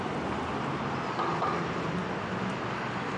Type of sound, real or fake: real